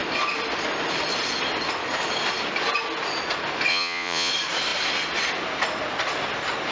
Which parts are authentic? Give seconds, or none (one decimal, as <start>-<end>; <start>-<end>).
0.0-3.7; 4.3-6.7